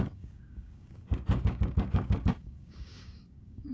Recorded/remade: remade